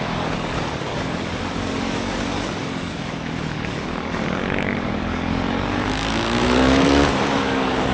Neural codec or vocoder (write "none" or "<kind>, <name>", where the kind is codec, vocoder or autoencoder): codec, DAC